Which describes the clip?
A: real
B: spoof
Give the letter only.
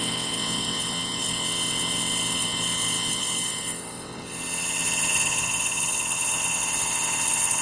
B